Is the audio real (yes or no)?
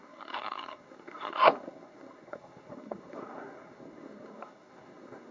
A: no